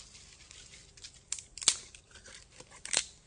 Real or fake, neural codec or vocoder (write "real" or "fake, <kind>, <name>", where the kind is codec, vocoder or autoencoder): real